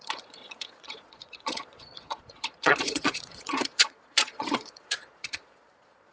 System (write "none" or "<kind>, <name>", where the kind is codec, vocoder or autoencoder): vocoder, Vocos